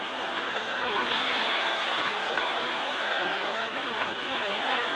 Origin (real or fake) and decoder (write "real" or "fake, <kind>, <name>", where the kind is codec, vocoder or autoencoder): fake, codec, SNAC